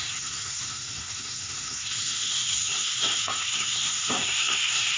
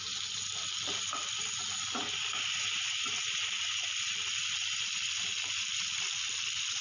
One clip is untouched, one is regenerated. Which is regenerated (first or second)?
first